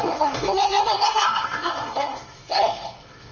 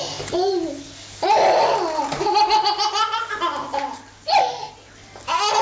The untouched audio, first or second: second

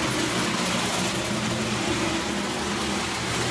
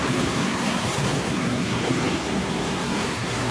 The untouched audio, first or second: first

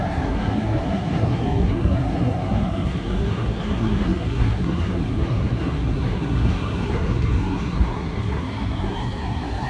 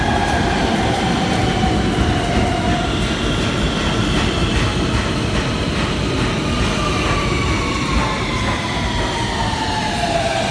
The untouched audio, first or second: second